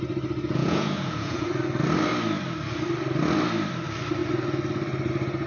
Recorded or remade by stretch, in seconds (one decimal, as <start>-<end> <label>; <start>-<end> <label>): 0.0-0.6 recorded; 0.6-1.5 remade; 1.5-5.5 recorded

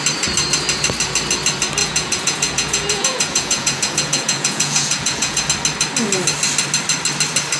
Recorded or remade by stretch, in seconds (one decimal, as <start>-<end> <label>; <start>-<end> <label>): 0.0-1.8 recorded; 1.8-5.5 remade; 5.5-7.6 recorded

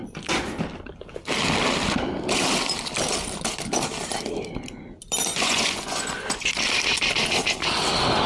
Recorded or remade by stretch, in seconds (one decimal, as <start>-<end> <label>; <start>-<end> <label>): 0.0-5.3 recorded; 5.3-6.4 remade; 6.4-8.3 recorded

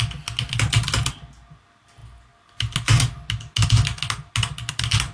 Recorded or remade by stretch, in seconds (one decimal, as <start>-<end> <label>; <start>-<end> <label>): 0.0-5.1 recorded

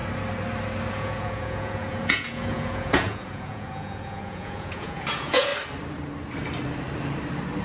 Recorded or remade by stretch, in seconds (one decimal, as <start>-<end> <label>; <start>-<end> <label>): 0.0-0.9 recorded; 0.9-5.5 remade; 5.5-7.6 recorded

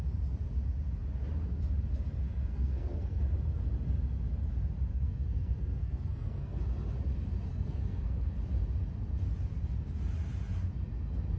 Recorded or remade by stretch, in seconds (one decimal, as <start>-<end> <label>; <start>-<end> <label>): 0.0-2.3 recorded; 2.3-3.2 remade; 3.2-4.9 recorded; 4.9-6.6 remade; 6.6-7.5 recorded; 7.5-8.3 remade; 8.3-11.4 recorded

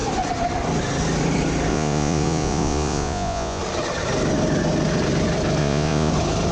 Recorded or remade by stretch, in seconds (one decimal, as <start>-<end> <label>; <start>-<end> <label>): 0.0-1.7 recorded; 1.7-3.6 remade; 3.6-5.6 recorded; 5.6-6.1 remade; 6.1-6.5 recorded